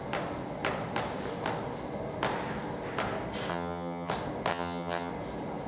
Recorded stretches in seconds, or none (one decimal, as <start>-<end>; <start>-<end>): 0.0-3.5; 4.1-4.5; 5.1-5.7

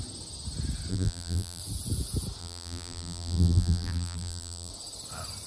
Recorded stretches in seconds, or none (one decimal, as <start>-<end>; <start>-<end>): 0.0-0.9; 1.6-2.4; 4.7-5.5